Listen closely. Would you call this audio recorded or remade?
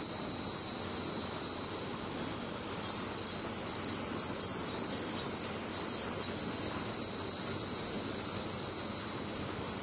recorded